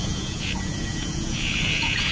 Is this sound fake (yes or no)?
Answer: yes